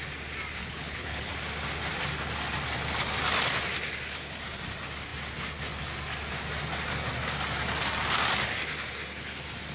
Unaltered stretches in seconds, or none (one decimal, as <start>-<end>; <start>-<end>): 0.0-0.6; 1.3-9.7